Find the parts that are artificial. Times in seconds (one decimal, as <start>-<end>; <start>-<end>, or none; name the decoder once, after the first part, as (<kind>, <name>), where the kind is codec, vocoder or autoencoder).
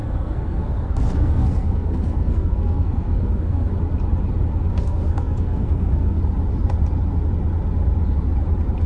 0.0-3.7 (codec, SNAC); 4.7-6.2